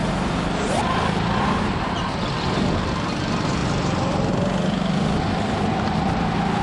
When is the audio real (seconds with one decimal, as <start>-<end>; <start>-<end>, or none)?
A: 0.0-6.6